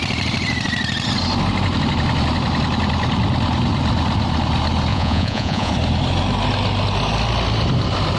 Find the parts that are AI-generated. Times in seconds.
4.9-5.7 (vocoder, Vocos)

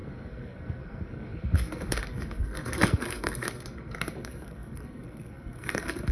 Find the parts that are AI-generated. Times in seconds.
0.0-6.1 (codec, SNAC)

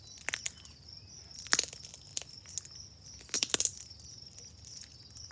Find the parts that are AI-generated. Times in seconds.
none

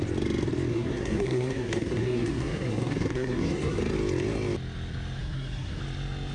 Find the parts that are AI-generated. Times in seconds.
0.7-3.8 (codec, SNAC); 5.2-5.8

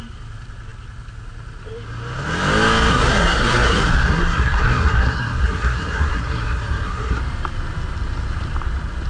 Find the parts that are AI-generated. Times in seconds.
2.9-7.2 (codec, SNAC)

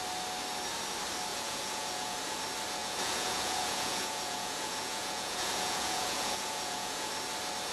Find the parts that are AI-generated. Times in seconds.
1.3-2.4 (vocoder, Vocos); 2.8-7.1

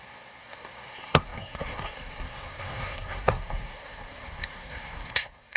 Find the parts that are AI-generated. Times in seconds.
0.0-5.6 (codec, SNAC)